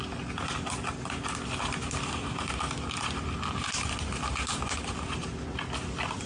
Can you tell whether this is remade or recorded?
recorded